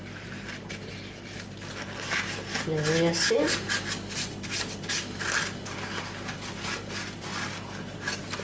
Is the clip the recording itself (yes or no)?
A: yes